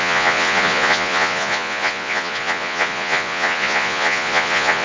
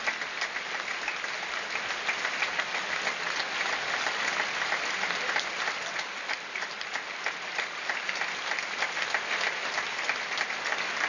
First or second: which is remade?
first